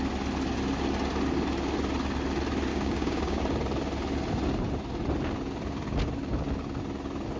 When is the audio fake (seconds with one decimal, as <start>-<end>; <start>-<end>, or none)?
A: 2.7-3.4